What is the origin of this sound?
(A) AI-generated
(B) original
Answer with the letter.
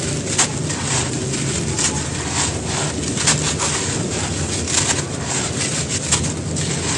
B